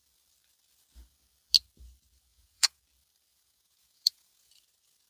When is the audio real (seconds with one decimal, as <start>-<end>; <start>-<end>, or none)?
0.0-2.3; 2.8-3.3; 4.5-5.1